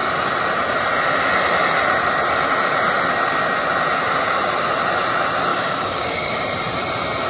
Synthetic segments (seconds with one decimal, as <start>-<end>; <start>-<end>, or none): 5.5-6.4